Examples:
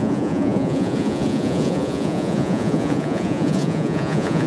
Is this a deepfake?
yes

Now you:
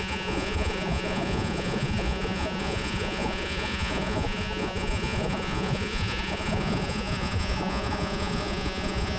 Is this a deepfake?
yes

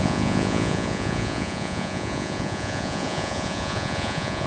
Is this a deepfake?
yes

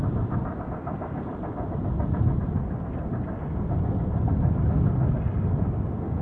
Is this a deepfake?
no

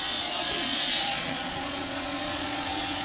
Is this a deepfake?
yes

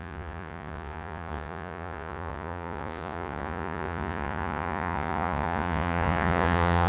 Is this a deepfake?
yes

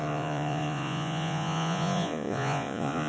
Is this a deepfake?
yes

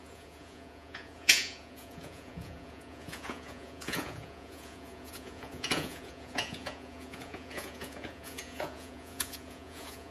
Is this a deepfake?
yes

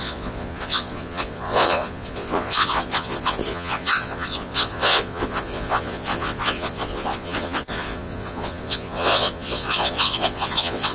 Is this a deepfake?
yes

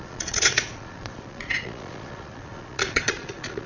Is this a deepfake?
yes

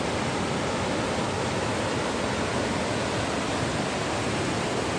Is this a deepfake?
no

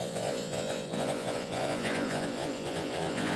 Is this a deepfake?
yes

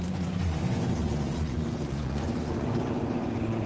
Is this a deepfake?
yes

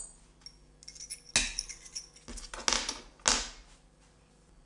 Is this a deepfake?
no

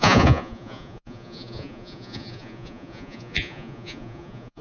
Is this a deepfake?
yes